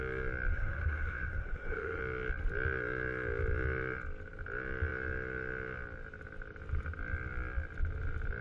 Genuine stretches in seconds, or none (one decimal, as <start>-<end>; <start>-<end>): 0.0-0.5; 2.0-8.4

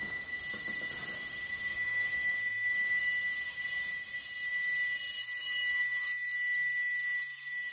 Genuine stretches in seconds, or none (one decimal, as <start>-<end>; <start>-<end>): 0.0-1.7; 3.0-5.2

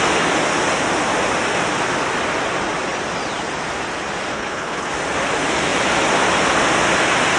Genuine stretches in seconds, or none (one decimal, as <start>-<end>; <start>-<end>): 0.0-4.3; 4.9-7.4

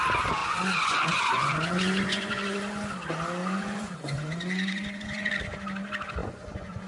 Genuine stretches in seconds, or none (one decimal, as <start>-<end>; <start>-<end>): 0.0-0.4; 2.8-3.4; 5.3-6.2

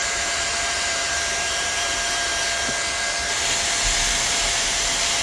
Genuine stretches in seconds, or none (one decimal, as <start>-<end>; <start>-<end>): 2.3-4.1

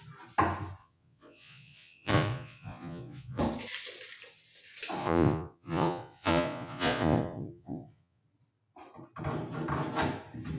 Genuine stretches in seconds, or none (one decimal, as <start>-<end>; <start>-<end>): 0.0-0.8; 3.4-5.0; 8.2-10.6

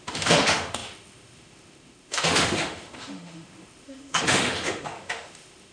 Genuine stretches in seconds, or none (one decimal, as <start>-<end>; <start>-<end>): none